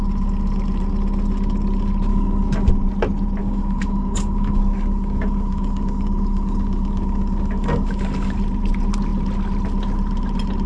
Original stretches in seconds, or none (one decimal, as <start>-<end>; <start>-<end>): 0.0-2.1; 2.7-3.4; 8.4-10.7